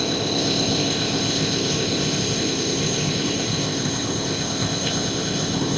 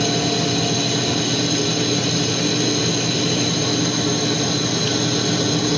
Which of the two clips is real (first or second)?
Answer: second